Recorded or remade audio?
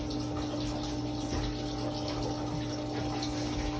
recorded